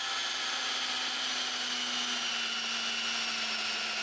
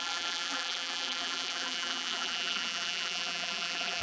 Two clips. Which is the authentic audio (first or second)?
first